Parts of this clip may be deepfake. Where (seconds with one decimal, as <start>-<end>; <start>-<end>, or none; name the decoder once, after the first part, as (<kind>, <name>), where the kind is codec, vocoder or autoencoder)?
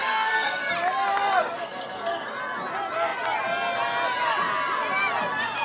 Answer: 0.0-0.7 (codec, SNAC); 1.4-2.2